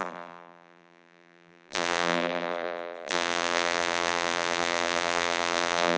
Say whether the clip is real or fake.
fake